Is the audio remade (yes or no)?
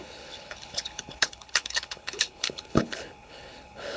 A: yes